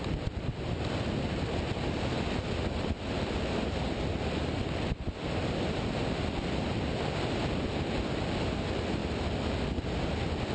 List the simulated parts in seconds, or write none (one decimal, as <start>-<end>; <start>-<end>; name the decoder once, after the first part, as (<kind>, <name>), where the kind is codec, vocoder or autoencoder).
none